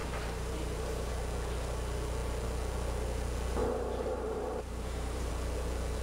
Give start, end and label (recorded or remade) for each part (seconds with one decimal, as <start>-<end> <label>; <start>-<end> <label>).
0.0-1.1 remade; 1.1-3.6 recorded; 3.6-5.3 remade; 5.3-6.0 recorded